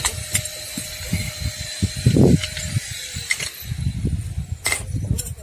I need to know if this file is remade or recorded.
recorded